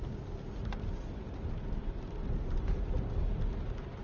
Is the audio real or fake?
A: real